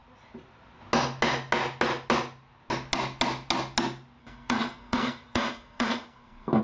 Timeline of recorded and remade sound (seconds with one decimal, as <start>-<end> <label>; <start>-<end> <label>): 0.0-4.2 recorded; 4.2-6.6 remade